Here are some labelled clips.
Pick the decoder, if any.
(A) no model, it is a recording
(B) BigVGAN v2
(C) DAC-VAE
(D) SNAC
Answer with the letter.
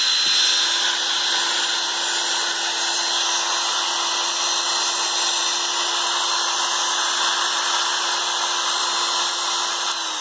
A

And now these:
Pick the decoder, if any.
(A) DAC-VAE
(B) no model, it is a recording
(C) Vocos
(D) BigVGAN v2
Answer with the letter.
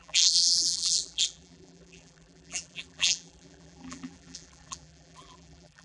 D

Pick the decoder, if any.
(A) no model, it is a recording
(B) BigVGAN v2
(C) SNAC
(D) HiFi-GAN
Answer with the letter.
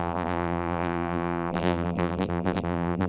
B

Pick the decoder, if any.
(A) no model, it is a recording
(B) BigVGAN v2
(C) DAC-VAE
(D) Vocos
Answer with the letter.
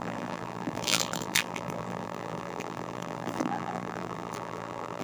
B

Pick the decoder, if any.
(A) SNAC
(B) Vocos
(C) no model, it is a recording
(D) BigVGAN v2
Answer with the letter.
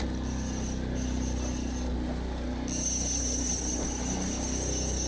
C